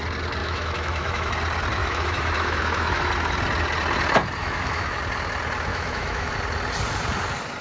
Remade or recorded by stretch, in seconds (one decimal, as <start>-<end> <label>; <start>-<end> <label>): 0.0-0.4 recorded; 0.4-1.3 remade; 1.3-1.8 recorded; 1.8-3.1 remade; 3.1-4.4 recorded; 4.4-5.0 remade; 5.0-5.7 recorded; 5.7-6.3 remade; 6.3-7.6 recorded